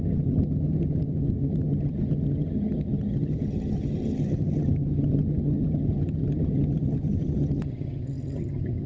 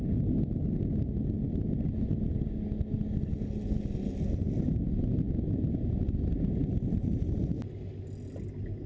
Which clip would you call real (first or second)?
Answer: second